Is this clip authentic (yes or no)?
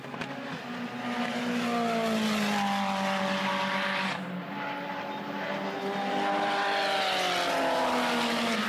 yes